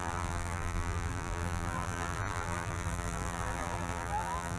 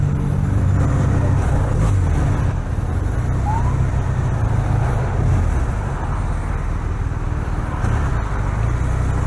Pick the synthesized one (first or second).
first